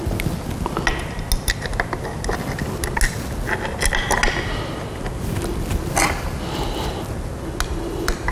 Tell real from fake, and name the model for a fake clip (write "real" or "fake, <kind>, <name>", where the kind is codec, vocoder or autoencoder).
real